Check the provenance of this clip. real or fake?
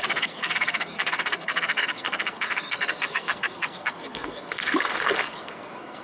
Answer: fake